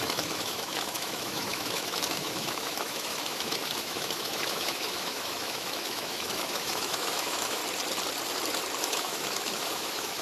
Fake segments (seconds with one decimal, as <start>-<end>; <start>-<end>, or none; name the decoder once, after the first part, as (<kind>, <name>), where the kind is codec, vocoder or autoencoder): 0.0-7.6 (autoencoder, DAC-VAE); 8.8-10.2